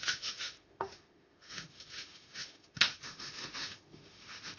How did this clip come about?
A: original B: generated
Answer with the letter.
B